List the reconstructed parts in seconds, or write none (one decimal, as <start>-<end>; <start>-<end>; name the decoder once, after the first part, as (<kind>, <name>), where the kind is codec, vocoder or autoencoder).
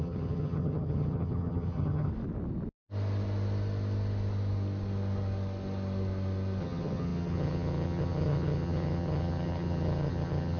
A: 0.0-2.1 (vocoder, HiFi-GAN); 6.6-10.6